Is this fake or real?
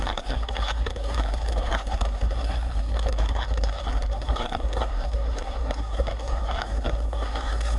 fake